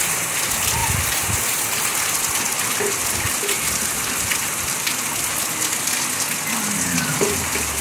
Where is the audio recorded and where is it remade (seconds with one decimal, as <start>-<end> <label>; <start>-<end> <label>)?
0.0-0.8 recorded; 0.8-5.5 remade; 5.5-7.8 recorded